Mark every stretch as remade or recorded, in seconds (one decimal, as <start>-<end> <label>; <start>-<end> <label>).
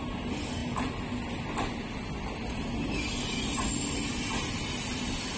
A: 0.0-5.4 recorded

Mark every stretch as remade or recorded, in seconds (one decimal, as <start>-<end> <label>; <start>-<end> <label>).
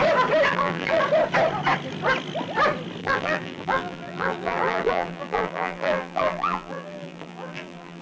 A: 0.0-0.5 recorded; 0.5-1.0 remade; 1.0-3.0 recorded; 3.0-8.0 remade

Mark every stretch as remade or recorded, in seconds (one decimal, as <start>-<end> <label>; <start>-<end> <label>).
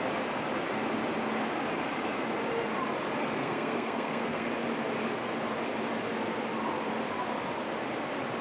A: 0.0-3.4 recorded; 3.4-4.5 remade; 4.5-8.4 recorded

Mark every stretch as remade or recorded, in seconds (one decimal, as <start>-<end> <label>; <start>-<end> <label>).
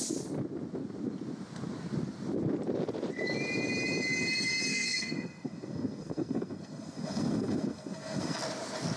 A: 0.0-4.7 recorded; 4.7-8.4 remade; 8.4-9.0 recorded